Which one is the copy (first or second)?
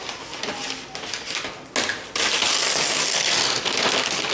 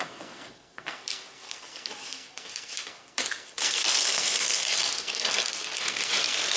second